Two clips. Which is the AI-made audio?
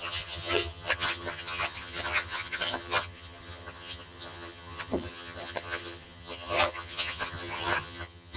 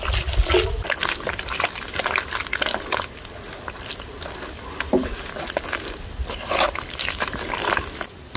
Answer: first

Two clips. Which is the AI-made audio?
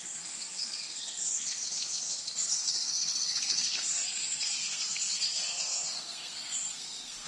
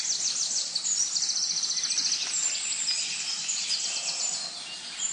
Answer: first